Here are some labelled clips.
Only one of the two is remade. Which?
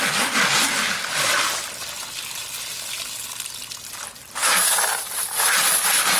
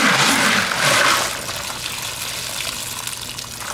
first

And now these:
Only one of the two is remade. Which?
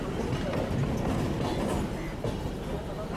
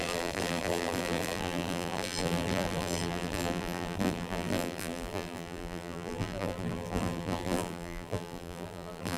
second